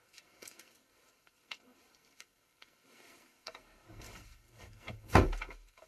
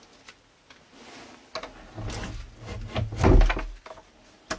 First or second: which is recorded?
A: second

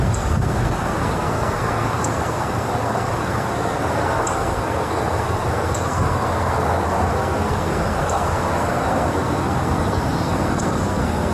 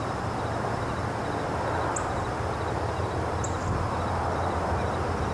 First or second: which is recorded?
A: second